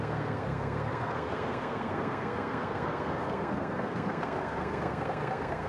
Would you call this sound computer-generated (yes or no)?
yes